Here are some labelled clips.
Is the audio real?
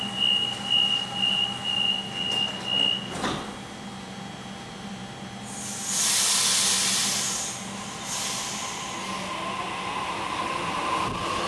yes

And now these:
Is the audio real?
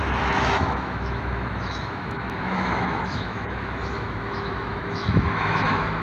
no